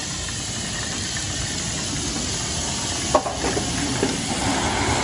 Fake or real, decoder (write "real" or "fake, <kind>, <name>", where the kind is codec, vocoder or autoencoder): real